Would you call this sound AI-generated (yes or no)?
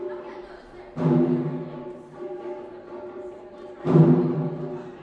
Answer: no